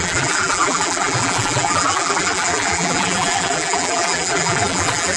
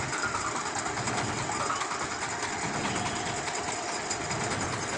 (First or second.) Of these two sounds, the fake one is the first